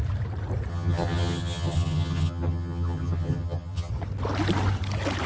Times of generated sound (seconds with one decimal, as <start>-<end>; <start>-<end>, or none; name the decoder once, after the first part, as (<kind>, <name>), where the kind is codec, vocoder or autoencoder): 0.7-3.9 (vocoder, HiFi-GAN)